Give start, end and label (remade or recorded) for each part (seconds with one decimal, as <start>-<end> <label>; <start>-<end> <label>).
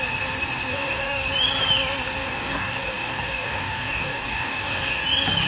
0.0-0.7 recorded; 0.7-1.3 remade; 1.3-2.2 recorded; 2.2-5.0 remade; 5.0-5.5 recorded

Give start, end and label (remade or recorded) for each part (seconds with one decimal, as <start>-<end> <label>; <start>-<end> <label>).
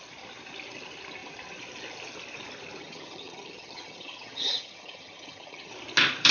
0.0-2.8 recorded; 2.8-5.7 remade; 5.7-6.3 recorded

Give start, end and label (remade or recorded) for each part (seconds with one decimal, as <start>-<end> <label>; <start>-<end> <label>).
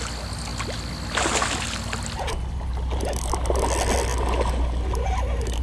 0.0-5.6 recorded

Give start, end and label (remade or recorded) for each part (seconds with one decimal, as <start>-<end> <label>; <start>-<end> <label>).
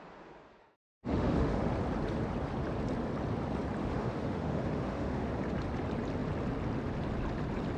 0.0-0.6 recorded; 0.6-1.7 remade; 1.7-3.8 recorded; 3.8-5.3 remade; 5.3-7.8 recorded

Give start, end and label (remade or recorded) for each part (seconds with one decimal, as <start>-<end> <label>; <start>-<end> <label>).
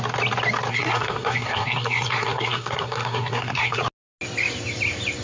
0.0-0.7 recorded; 0.7-3.8 remade; 3.8-5.2 recorded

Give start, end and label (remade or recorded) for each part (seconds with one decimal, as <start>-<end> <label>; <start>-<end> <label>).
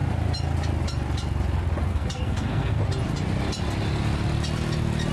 0.0-1.9 recorded; 1.9-2.8 remade; 2.8-5.1 recorded